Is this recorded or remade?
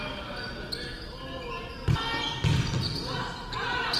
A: recorded